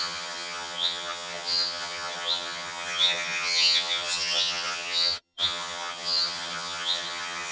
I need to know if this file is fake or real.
fake